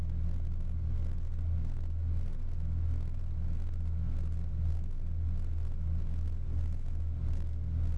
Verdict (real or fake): real